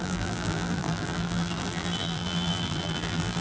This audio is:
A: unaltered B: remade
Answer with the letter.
B